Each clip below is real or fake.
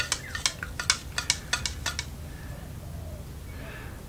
real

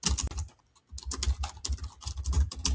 real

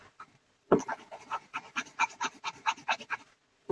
fake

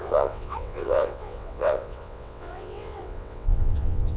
fake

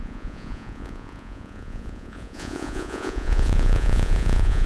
fake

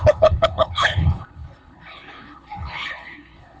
fake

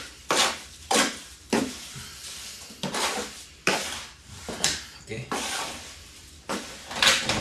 fake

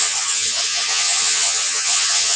fake